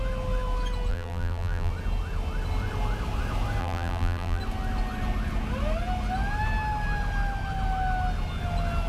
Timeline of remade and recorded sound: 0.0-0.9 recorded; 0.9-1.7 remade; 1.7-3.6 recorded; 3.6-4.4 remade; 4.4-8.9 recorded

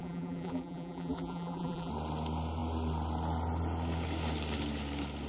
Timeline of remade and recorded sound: 0.0-1.9 remade; 1.9-5.3 recorded

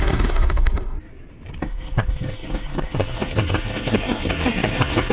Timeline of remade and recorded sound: 0.0-1.1 remade; 1.1-1.6 recorded; 1.6-5.1 remade

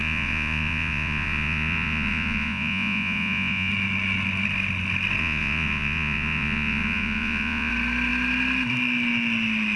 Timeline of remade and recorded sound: 0.0-3.7 remade; 3.7-5.2 recorded; 5.2-7.7 remade; 7.7-9.8 recorded

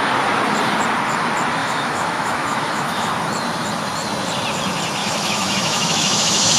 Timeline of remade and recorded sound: 0.0-1.6 recorded; 1.6-3.1 remade; 3.1-5.0 recorded; 5.0-6.6 remade

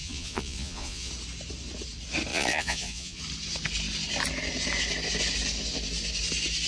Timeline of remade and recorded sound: 0.0-1.1 remade; 1.1-2.3 recorded; 2.3-3.2 remade; 3.2-6.7 recorded

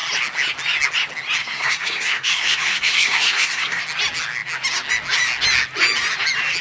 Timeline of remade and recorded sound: 0.0-1.4 recorded; 1.4-3.8 remade; 3.8-6.6 recorded